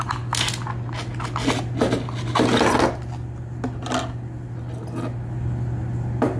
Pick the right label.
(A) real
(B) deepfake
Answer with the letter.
A